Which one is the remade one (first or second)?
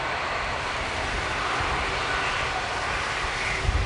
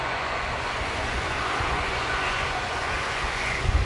second